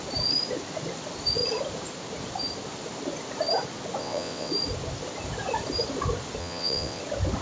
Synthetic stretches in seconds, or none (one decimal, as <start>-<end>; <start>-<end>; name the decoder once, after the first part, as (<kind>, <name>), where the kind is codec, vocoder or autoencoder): 4.0-4.5 (vocoder, WaveNeXt); 6.4-7.0